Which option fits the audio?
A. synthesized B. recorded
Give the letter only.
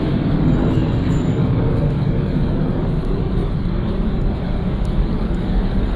A